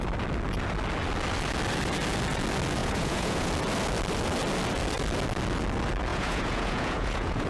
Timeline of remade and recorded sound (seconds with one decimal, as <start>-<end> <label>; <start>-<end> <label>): 0.0-2.8 recorded; 2.8-3.5 remade; 3.5-6.1 recorded; 6.1-7.5 remade